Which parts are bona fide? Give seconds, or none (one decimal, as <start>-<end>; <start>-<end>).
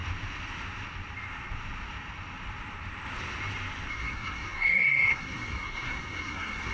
0.0-3.9